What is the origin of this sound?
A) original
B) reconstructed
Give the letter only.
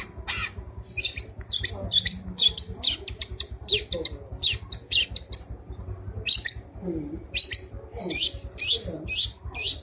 B